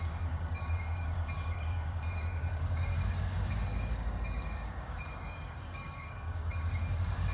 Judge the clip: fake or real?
fake